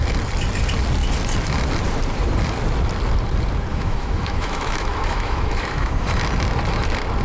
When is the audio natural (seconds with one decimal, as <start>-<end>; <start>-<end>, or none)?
0.0-3.7; 6.2-7.2